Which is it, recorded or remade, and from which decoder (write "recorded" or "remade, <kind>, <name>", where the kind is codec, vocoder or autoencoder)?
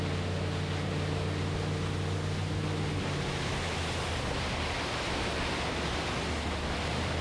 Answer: recorded